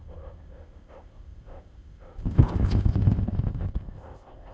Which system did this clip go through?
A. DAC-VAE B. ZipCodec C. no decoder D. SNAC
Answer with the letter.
B